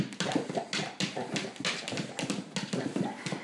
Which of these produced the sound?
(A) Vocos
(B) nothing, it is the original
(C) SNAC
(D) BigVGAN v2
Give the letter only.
B